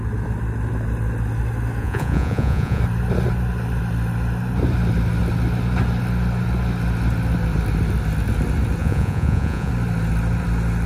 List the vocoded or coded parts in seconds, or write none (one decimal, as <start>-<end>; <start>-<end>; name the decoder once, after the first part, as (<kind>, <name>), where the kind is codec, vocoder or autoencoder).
1.8-2.8 (vocoder, Vocos); 8.8-9.7